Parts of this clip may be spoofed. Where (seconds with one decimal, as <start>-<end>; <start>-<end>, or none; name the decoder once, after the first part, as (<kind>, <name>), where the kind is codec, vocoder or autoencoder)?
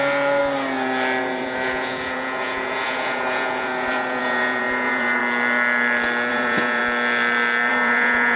0.0-0.4 (vocoder, Vocos); 1.2-5.2; 6.3-6.8; 7.7-8.4